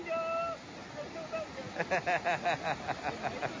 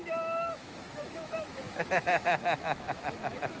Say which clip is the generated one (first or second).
second